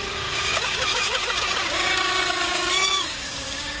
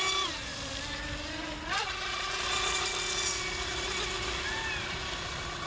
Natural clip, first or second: second